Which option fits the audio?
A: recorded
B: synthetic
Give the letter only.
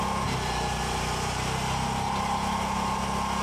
A